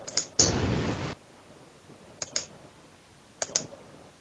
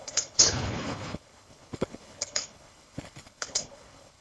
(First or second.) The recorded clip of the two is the first